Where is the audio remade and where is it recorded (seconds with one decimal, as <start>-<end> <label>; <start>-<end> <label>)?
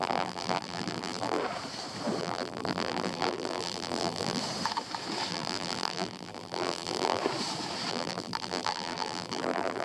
0.0-1.4 remade; 1.4-2.2 recorded; 2.2-4.4 remade; 4.4-5.3 recorded; 5.3-7.2 remade; 7.2-7.9 recorded; 7.9-9.8 remade